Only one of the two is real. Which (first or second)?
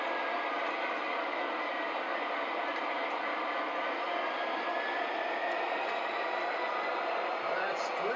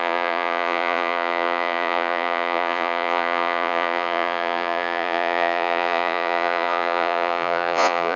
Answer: first